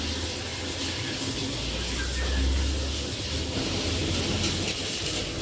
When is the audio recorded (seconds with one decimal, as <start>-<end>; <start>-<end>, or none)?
0.0-0.5; 1.5-5.4